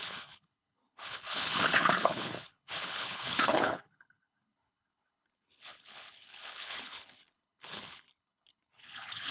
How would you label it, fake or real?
fake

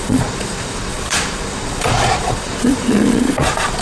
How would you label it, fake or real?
fake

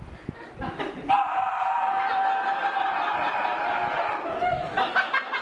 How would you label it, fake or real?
fake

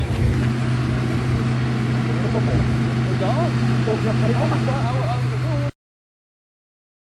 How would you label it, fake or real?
real